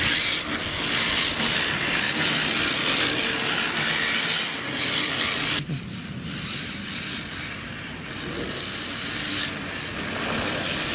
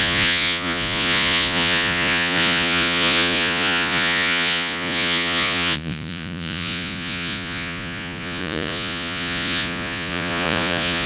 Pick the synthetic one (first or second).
second